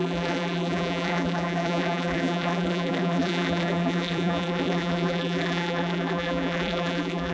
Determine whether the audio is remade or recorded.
remade